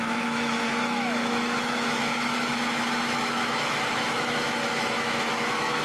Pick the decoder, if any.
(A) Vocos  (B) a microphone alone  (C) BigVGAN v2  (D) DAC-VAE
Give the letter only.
D